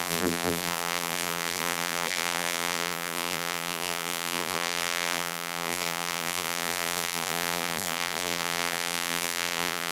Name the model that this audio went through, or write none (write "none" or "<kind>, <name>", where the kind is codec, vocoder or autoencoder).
vocoder, BigVGAN v2